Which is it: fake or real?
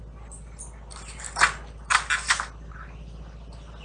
real